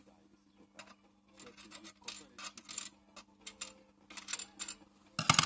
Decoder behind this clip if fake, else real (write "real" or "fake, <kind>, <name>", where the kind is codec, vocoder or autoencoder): real